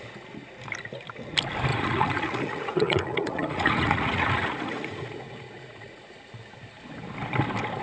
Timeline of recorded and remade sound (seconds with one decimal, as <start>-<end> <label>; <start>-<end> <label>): 0.0-1.7 recorded; 1.7-6.2 remade; 6.2-7.8 recorded